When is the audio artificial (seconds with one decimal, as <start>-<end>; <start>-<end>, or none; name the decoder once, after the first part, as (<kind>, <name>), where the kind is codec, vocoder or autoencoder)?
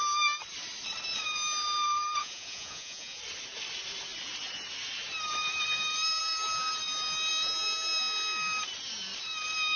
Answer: 2.2-3.2 (vocoder, Vocos)